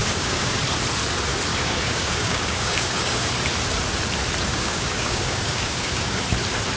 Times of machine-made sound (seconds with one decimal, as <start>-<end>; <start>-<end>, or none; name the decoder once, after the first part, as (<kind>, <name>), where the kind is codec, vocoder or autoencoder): 0.0-0.6 (codec, DAC); 1.5-3.3; 4.5-6.2